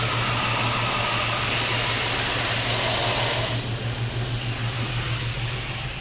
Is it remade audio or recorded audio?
recorded